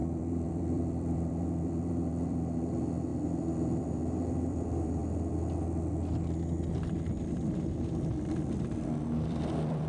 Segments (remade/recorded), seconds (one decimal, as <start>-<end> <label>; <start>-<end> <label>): 0.0-5.0 remade; 5.0-9.0 recorded; 9.0-9.9 remade